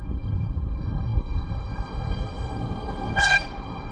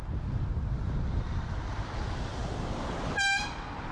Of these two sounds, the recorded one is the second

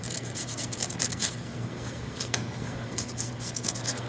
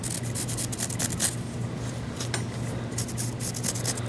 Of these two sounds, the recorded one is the second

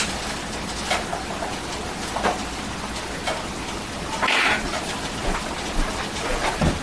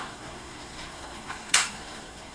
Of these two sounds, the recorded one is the first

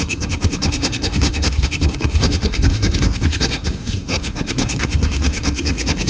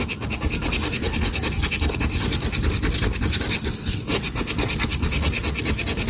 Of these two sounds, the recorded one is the second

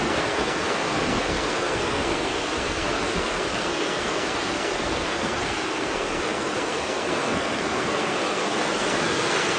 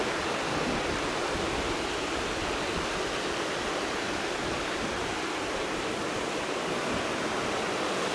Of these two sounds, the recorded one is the second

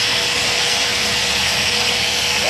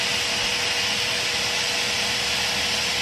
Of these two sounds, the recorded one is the second